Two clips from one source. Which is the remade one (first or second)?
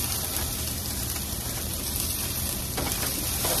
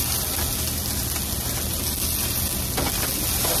first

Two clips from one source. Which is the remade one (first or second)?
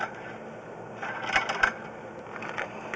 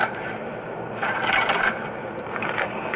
second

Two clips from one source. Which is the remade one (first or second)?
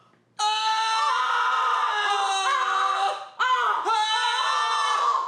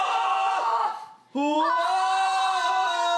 second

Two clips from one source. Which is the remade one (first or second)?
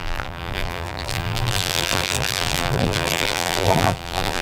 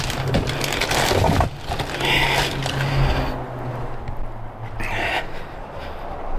first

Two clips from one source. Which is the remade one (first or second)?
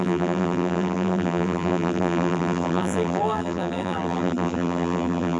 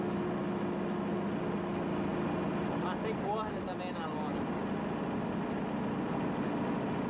first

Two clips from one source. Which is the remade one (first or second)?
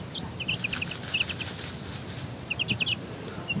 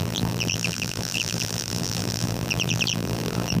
second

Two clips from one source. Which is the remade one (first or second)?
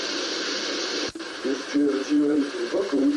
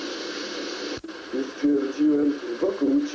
first